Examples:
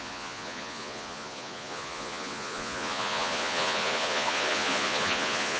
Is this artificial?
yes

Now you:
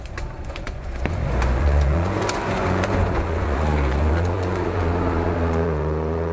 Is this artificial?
yes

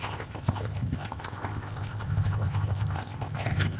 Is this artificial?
yes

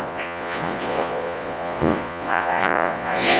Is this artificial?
yes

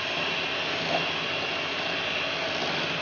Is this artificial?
no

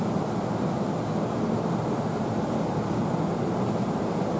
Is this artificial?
no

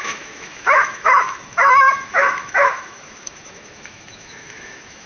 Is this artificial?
yes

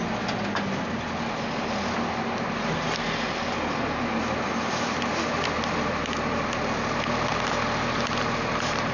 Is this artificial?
no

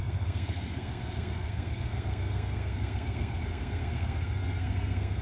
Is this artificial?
yes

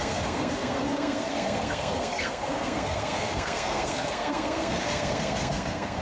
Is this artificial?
yes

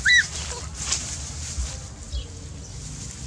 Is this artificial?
no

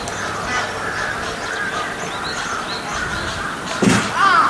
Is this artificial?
no